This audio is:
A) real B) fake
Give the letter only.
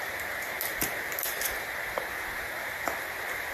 A